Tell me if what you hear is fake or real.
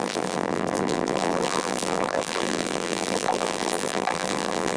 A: fake